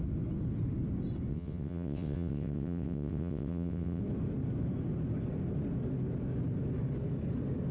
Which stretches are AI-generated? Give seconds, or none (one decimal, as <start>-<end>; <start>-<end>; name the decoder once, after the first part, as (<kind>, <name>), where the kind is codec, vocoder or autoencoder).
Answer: 1.3-4.0 (vocoder, WaveNeXt)